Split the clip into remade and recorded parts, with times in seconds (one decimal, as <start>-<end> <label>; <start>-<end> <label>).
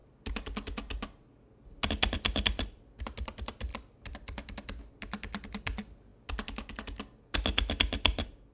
0.0-8.5 recorded